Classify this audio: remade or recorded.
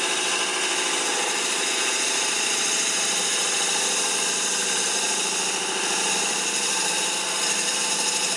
remade